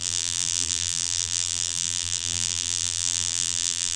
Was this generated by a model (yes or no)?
yes